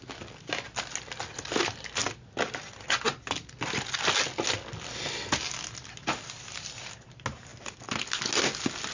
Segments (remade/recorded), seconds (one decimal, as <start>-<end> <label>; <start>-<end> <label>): 0.0-8.9 recorded

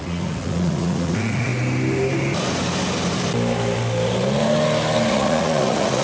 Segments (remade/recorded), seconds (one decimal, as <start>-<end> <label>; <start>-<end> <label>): 0.0-1.5 remade; 1.5-5.1 recorded; 5.1-6.0 remade